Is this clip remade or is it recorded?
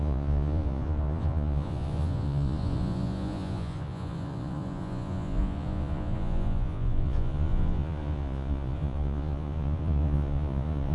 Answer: remade